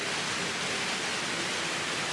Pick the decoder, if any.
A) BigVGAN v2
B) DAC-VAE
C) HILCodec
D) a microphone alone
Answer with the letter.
D